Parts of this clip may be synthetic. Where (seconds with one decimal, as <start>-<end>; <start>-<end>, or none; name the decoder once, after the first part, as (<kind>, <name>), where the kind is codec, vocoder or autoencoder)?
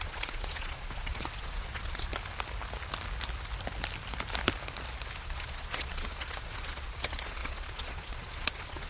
0.0-2.1 (vocoder, Vocos); 5.2-8.9